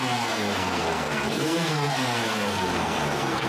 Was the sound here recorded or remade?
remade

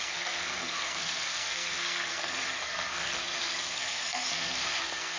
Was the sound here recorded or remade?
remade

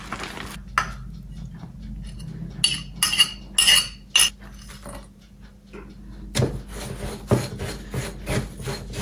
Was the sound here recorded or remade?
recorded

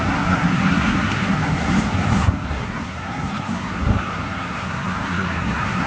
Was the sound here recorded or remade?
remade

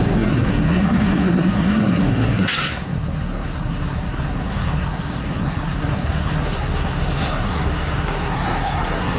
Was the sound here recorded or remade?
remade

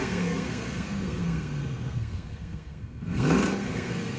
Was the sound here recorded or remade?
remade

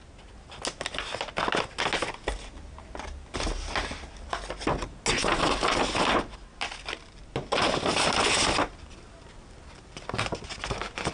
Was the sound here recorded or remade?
recorded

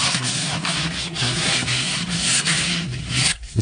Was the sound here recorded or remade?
remade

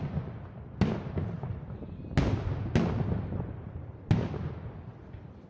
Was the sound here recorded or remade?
recorded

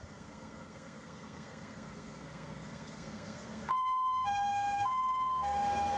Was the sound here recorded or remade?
remade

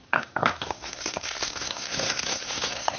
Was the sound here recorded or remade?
remade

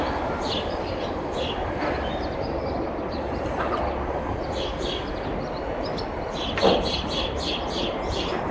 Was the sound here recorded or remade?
recorded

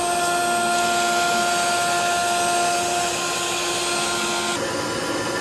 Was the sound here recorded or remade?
recorded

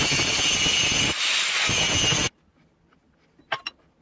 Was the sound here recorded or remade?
recorded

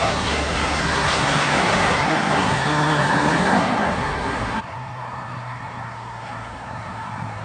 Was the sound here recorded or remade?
remade